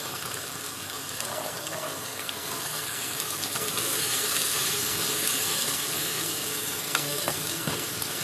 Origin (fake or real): fake